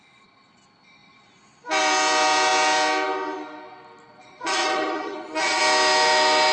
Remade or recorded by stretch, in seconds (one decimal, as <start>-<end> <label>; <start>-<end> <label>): 0.0-4.2 recorded; 4.2-5.6 remade; 5.6-6.5 recorded